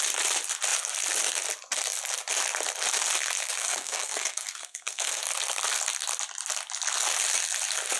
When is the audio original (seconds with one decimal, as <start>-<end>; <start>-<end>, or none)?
0.0-3.6; 5.2-8.0